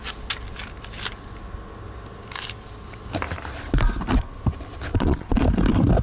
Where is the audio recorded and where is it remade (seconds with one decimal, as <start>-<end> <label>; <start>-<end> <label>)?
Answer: 0.0-4.9 recorded; 4.9-5.4 remade; 5.4-6.0 recorded